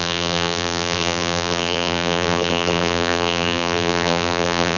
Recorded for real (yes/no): no